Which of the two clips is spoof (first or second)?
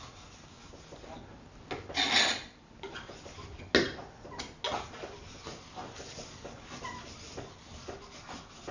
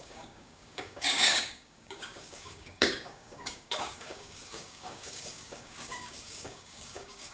second